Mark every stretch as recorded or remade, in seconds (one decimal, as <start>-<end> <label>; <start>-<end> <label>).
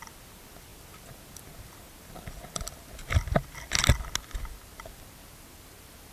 0.0-6.1 recorded